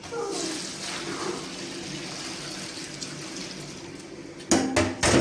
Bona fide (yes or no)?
yes